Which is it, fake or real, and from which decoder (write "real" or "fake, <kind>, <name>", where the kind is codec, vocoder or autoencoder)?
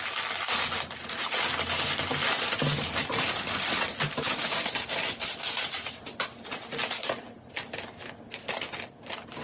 real